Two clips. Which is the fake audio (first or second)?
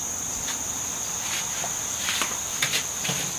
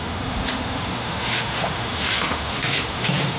second